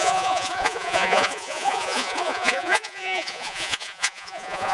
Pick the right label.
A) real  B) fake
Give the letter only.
B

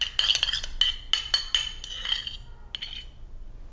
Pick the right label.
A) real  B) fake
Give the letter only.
A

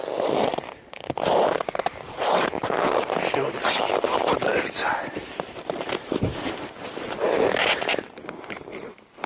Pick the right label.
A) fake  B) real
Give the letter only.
A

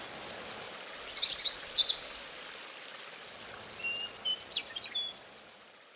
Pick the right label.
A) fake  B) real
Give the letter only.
B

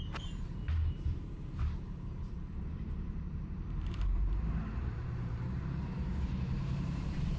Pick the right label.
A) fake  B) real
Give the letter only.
A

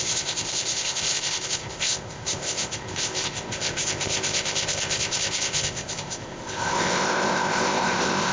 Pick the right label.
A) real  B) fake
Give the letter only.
B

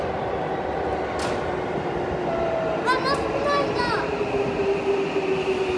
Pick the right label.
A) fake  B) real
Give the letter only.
B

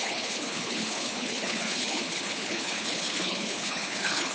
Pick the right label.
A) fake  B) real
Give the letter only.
A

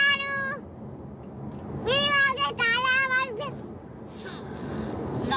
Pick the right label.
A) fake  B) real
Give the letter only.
B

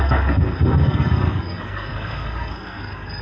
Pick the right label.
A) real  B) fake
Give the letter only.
B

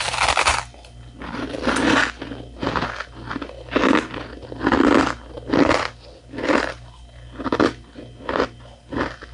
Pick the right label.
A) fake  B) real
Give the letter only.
B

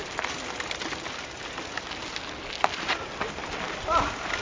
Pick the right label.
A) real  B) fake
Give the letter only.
A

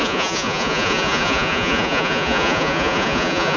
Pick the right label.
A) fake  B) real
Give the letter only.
A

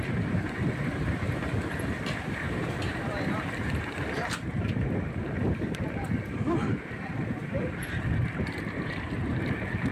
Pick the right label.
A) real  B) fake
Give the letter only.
B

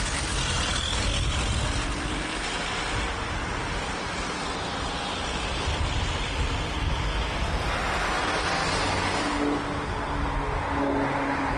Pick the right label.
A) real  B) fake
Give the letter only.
A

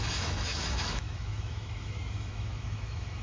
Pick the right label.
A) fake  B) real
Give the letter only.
A